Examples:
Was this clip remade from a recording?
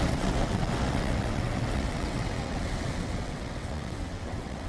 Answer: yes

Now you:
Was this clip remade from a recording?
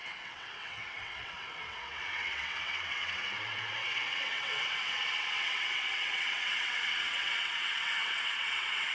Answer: yes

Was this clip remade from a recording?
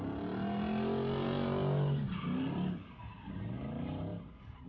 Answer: no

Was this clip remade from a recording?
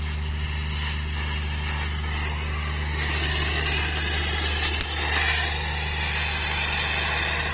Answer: no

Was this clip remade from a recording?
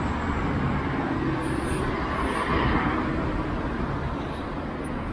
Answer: no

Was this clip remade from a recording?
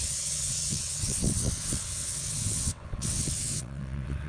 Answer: yes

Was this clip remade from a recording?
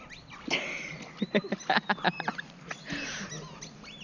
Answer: no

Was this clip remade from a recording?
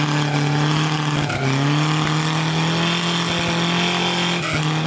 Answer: no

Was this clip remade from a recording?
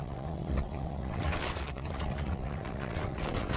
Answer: yes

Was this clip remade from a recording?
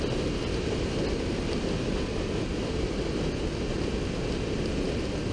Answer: no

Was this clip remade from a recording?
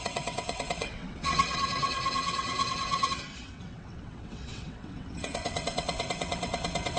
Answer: yes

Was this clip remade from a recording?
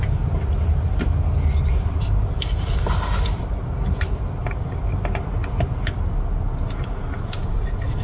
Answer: no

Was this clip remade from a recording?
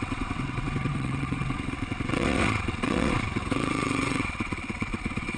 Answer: yes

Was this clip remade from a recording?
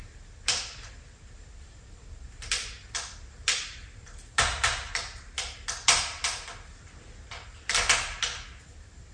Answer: no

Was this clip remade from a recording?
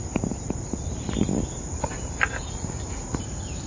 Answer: no